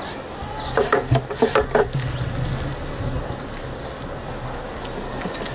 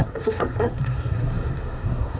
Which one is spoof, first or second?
second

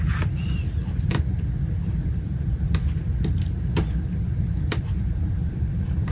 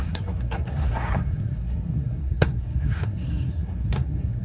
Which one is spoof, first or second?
second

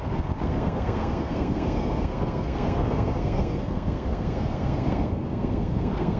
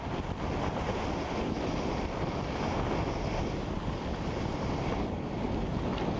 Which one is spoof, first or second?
first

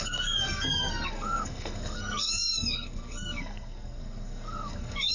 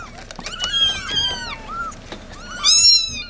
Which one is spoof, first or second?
first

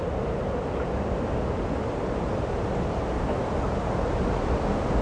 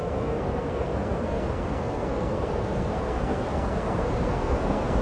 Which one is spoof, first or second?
second